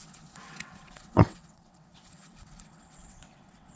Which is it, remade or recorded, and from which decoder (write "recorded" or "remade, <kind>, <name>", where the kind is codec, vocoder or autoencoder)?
remade, vocoder, WaveNeXt